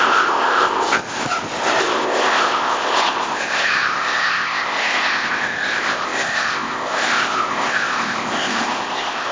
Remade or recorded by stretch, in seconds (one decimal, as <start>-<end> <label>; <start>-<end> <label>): 0.0-1.2 remade; 1.2-1.8 recorded; 1.8-9.3 remade